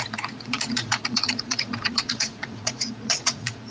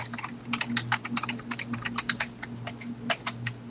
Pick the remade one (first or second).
first